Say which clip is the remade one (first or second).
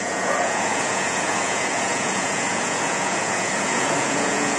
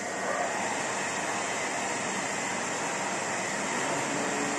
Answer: first